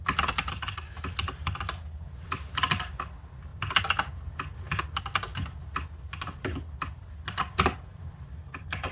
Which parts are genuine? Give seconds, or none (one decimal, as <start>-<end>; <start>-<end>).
0.0-8.9